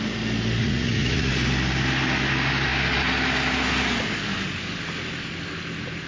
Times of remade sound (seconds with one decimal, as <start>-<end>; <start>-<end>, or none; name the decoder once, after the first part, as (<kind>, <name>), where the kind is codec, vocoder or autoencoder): 0.6-1.3 (vocoder, Vocos)